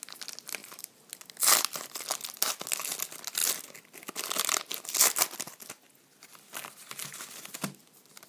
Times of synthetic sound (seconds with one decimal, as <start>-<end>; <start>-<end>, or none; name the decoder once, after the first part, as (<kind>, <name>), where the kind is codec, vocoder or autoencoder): none